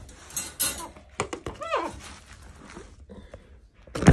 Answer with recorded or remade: recorded